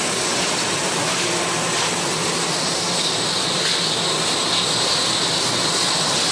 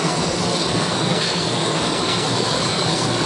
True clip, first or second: first